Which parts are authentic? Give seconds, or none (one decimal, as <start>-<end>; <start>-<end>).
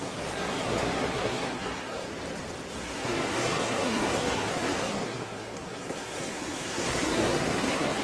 2.1-2.7